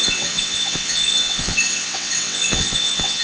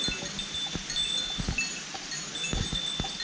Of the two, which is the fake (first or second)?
first